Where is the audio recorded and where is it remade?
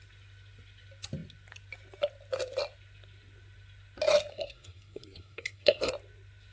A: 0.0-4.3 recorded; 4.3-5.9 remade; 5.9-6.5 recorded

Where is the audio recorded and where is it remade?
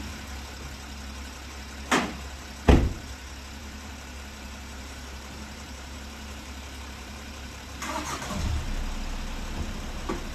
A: 0.0-3.6 recorded; 3.6-8.4 remade; 8.4-10.3 recorded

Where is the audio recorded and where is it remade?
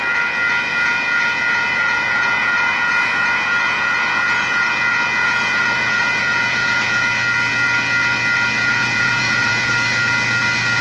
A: 0.0-0.7 recorded; 0.7-4.7 remade; 4.7-5.2 recorded; 5.2-7.1 remade; 7.1-8.6 recorded; 8.6-9.7 remade; 9.7-10.8 recorded